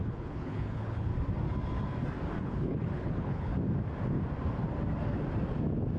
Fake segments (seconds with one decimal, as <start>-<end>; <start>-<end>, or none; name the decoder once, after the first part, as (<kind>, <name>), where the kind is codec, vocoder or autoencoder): 0.0-1.1 (codec, HILCodec); 2.4-3.5